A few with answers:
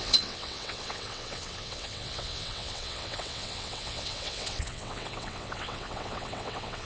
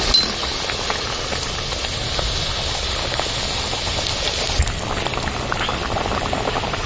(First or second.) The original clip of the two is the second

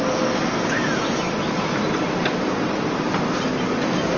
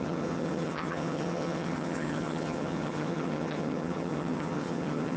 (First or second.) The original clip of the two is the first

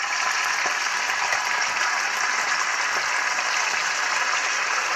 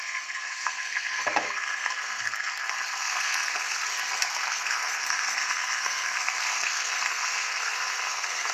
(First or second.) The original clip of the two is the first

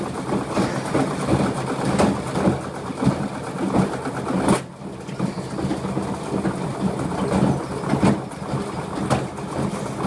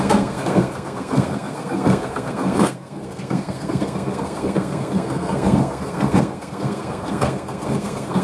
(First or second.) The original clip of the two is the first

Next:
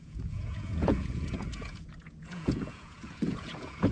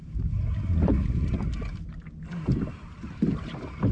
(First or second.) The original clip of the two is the second